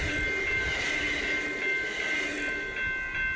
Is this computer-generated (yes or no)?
no